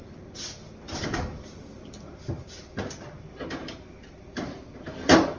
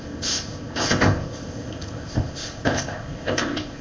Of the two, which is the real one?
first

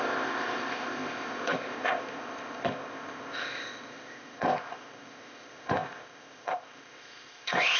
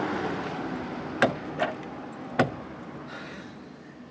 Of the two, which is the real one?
second